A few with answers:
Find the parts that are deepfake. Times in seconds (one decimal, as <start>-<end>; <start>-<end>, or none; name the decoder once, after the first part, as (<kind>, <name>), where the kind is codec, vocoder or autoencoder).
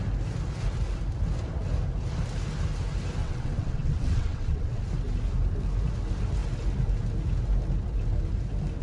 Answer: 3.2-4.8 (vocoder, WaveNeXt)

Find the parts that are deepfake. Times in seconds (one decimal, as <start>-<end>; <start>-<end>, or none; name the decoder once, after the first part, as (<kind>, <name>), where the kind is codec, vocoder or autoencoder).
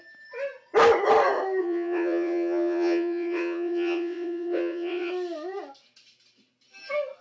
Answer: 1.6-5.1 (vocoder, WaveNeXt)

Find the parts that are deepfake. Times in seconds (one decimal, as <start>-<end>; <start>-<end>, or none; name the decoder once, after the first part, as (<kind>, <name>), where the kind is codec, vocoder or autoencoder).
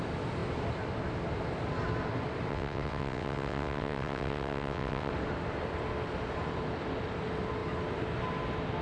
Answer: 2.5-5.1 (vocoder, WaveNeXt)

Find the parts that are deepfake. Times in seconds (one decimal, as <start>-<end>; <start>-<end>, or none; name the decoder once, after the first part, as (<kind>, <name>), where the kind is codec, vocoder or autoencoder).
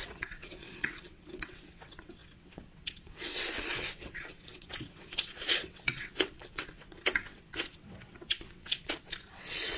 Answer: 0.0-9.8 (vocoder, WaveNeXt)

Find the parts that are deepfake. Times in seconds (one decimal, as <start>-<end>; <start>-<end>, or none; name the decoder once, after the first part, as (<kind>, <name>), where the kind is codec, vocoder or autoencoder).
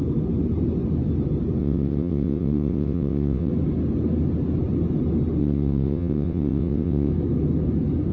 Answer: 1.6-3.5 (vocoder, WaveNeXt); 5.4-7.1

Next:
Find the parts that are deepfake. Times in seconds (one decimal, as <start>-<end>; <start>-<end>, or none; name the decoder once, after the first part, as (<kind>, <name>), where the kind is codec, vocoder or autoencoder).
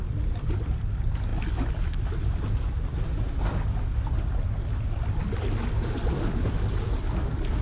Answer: none